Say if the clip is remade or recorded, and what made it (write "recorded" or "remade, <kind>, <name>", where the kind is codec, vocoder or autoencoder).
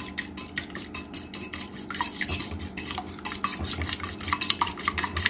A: remade, vocoder, BigVGAN v2